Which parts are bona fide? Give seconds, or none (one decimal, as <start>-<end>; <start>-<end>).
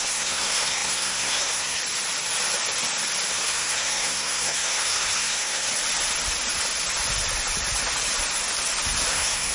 1.8-3.3; 5.7-9.1